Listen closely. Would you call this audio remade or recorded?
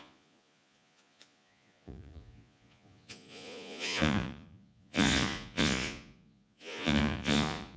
remade